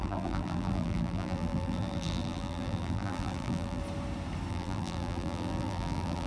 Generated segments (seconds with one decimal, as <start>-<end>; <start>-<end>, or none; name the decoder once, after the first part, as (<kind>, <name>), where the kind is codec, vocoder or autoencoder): 0.0-3.8 (vocoder, BigVGAN v2); 4.5-6.3